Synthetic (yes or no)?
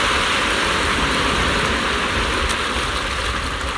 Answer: no